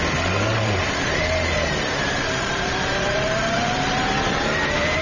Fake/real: fake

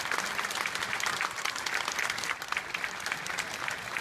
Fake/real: real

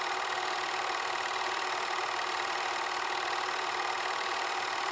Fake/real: fake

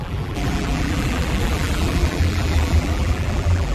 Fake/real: fake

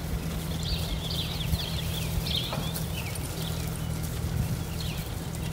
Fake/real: real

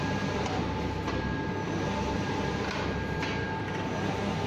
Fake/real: real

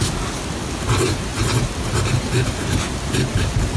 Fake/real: real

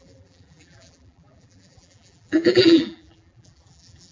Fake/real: fake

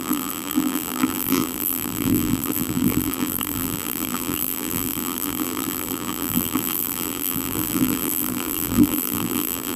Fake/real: fake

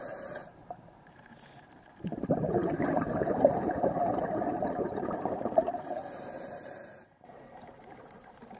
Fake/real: fake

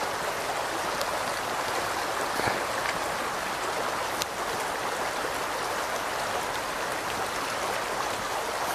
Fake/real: real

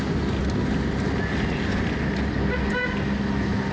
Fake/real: real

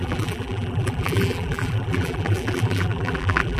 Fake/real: fake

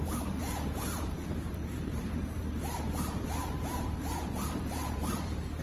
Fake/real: fake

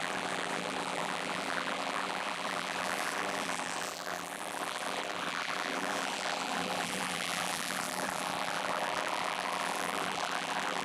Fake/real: fake